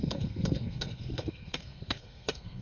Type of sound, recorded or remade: remade